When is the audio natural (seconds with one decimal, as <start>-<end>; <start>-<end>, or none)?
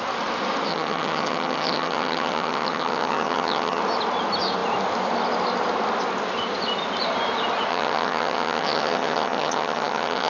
0.0-0.7; 3.8-7.7